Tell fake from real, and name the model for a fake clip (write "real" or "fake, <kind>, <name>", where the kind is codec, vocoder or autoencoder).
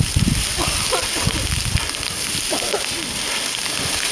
real